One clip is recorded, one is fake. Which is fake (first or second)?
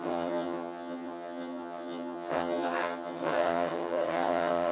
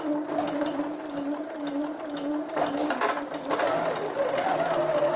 first